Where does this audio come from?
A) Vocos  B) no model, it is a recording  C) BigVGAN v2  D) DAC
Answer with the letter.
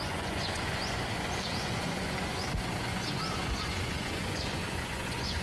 A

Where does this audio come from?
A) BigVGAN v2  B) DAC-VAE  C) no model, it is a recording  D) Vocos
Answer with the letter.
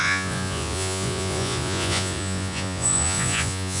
D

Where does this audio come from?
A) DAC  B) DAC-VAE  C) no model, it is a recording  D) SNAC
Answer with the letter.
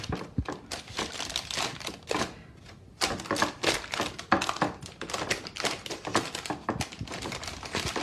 C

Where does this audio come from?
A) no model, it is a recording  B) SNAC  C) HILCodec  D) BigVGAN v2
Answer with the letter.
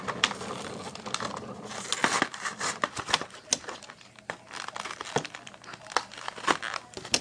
A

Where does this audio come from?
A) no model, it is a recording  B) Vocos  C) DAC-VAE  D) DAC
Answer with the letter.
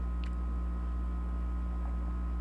A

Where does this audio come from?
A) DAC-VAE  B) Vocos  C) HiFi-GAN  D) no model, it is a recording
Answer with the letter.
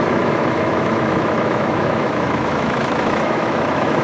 A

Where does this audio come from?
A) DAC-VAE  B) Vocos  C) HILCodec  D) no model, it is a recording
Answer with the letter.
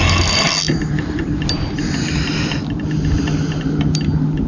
D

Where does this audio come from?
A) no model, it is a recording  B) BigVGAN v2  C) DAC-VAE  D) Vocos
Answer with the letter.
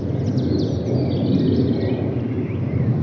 A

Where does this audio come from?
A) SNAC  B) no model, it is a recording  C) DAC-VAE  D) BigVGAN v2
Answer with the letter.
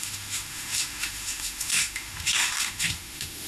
C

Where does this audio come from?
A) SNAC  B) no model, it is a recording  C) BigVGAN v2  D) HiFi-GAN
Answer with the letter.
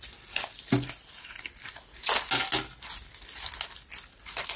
B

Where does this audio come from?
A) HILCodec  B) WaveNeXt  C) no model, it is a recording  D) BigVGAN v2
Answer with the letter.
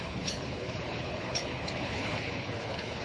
A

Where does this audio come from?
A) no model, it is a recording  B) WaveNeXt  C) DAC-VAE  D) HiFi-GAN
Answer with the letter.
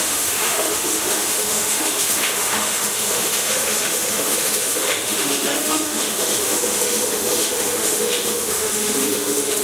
C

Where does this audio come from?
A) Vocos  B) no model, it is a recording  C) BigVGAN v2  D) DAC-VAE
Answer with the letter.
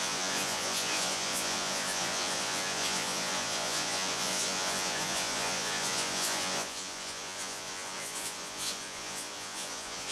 A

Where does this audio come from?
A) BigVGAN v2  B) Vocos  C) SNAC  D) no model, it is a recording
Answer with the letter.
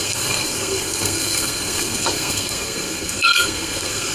C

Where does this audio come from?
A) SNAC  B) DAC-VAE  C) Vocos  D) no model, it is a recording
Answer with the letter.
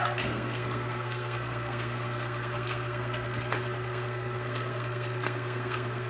A